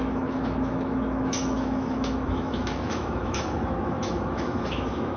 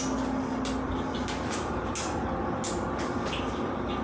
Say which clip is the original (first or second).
second